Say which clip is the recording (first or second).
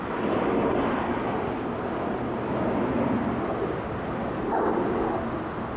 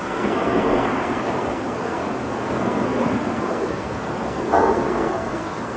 first